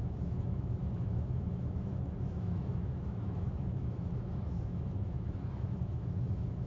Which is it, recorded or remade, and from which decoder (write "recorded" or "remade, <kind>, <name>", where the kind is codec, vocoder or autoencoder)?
remade, autoencoder, DAC-VAE